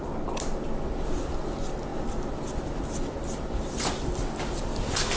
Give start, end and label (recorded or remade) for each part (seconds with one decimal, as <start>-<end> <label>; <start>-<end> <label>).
0.0-5.2 recorded